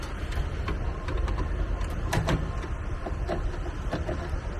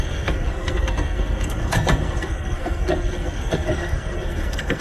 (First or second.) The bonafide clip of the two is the first